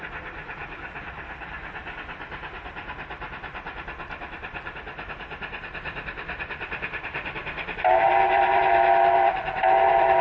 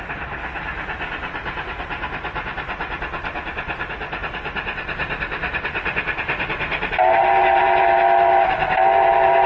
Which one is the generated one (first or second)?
first